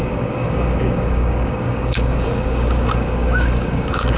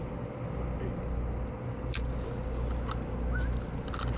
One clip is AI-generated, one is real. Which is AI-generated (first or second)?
first